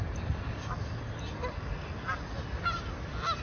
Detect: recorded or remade recorded